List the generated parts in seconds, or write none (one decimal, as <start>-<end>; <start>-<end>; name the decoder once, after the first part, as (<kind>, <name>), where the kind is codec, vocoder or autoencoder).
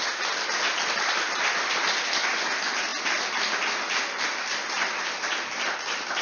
none